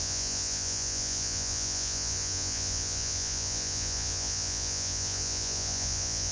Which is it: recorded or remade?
remade